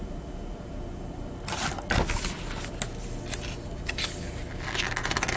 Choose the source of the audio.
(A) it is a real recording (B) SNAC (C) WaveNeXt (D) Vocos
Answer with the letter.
A